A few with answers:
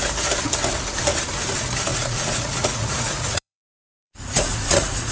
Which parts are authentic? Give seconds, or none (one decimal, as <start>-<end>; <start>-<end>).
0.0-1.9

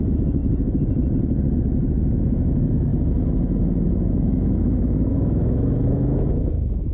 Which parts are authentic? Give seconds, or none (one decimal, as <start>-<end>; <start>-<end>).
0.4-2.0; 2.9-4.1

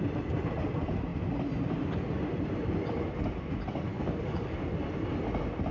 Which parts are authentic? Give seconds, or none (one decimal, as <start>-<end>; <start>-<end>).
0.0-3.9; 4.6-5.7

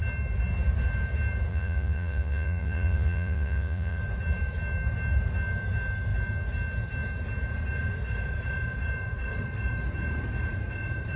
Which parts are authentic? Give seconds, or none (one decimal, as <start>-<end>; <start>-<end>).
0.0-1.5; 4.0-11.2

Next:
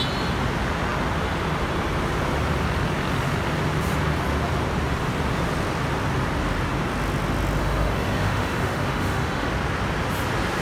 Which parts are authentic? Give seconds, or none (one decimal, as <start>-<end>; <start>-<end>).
0.0-7.6; 9.5-10.6

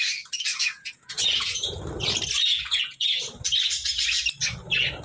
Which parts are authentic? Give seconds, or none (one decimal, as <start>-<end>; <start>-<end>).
0.0-0.5; 1.7-2.4; 3.2-5.0

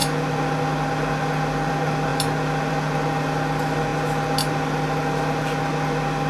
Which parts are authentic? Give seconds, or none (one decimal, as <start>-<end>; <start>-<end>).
0.0-6.3

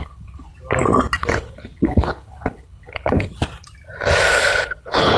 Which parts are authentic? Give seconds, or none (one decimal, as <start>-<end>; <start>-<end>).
0.5-1.2; 3.3-4.3